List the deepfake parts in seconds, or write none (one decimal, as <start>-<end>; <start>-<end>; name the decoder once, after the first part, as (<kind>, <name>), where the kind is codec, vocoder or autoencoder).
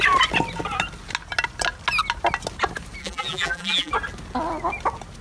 3.0-3.9 (vocoder, BigVGAN v2)